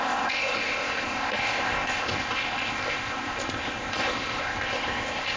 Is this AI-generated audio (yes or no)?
yes